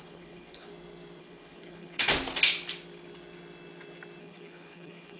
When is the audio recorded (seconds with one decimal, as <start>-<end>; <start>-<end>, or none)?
0.7-1.2; 2.1-4.2